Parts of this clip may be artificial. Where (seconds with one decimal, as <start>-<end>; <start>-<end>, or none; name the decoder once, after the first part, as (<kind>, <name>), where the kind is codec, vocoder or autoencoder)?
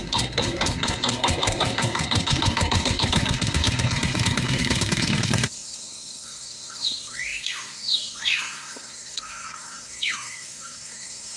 0.0-11.4 (codec, SNAC)